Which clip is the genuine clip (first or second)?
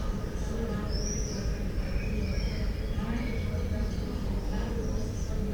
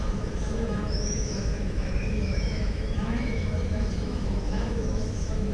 first